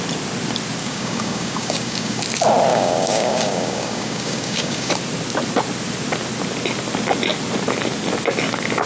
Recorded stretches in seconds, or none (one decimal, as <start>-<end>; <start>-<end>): 0.0-0.8; 2.2-2.7; 4.9-8.9